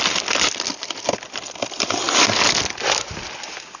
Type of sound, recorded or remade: recorded